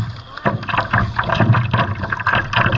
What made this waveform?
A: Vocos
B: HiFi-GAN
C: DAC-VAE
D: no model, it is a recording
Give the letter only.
D